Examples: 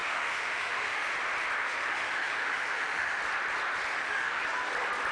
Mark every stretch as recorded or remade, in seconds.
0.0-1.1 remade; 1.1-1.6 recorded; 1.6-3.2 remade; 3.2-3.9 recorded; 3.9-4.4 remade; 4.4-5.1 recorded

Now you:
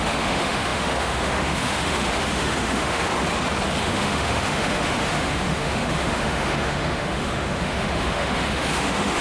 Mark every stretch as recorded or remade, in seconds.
0.0-3.1 remade; 3.1-3.8 recorded; 3.8-9.2 remade

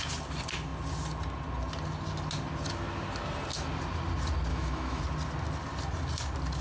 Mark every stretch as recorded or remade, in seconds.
0.0-4.5 recorded; 4.5-5.0 remade; 5.0-6.6 recorded

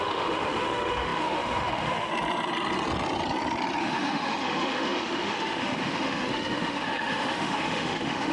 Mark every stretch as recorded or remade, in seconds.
0.0-2.1 remade; 2.1-3.8 recorded; 3.8-8.3 remade

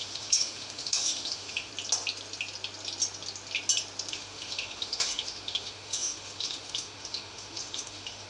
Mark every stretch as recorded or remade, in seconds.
0.0-1.7 remade; 1.7-4.1 recorded; 4.1-8.3 remade

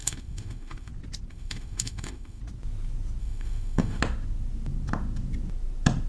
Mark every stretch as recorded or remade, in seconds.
0.0-0.9 remade; 0.9-1.3 recorded; 1.3-2.4 remade; 2.4-3.2 recorded; 3.2-4.0 remade; 4.0-6.1 recorded

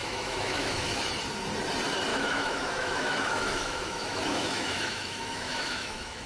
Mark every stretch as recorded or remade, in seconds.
0.0-1.0 remade; 1.0-2.1 recorded; 2.1-6.3 remade